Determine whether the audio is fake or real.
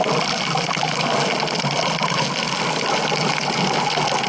real